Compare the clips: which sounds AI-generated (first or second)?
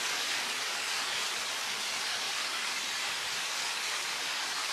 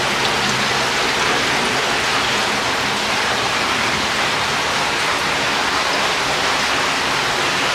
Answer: first